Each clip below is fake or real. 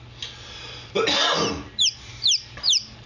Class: real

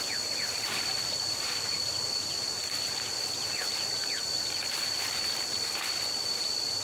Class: fake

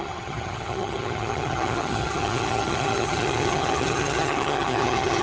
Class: fake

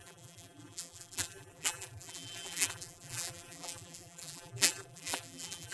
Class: fake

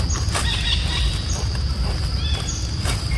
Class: real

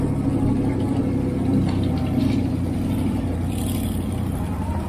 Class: real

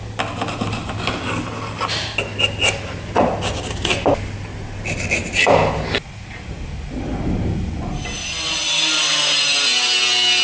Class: real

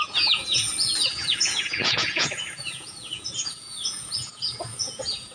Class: fake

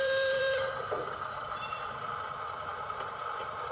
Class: fake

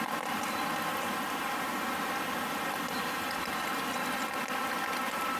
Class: real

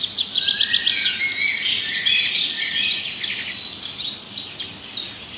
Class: real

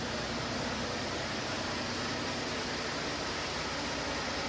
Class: real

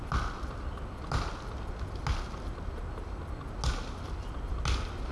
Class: real